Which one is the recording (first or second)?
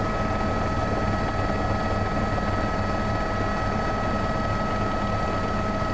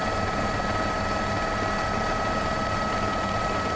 first